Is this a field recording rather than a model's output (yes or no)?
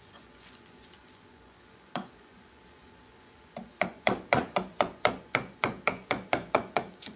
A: no